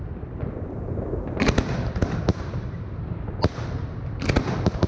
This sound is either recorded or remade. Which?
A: recorded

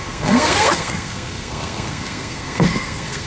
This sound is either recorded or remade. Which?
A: remade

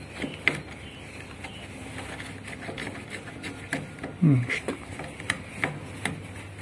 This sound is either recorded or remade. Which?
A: recorded